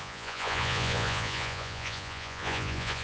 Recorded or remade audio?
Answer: remade